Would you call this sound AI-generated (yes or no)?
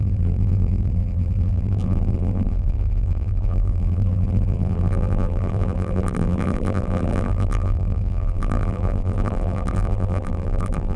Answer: yes